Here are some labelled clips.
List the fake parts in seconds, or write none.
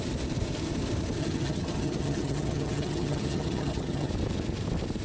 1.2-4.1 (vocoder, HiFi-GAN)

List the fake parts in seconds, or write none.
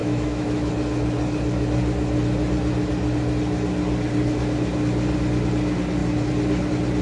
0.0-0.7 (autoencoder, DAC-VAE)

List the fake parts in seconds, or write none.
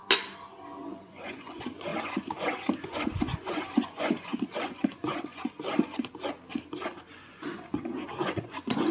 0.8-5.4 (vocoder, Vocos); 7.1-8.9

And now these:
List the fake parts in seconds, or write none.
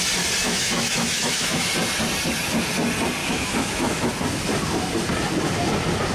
0.4-1.7 (autoencoder, DAC-VAE); 3.2-4.1